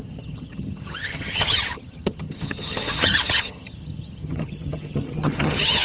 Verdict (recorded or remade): remade